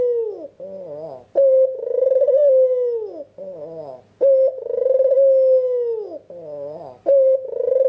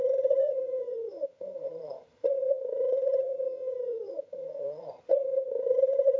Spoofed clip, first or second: second